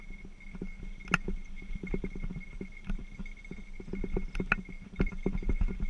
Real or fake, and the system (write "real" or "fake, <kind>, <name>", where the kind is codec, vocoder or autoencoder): real